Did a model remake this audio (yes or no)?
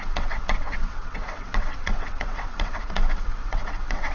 yes